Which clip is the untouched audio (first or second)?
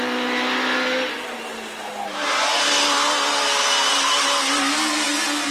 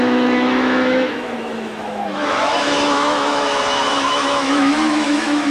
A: first